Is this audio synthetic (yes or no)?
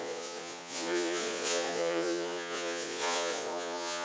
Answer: yes